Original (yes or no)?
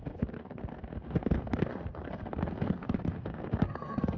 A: no